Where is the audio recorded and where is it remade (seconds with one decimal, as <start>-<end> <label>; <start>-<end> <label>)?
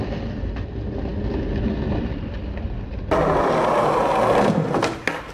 0.0-5.3 recorded